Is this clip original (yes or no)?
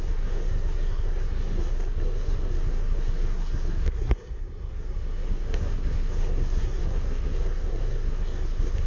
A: no